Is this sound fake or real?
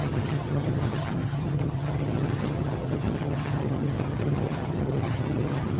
fake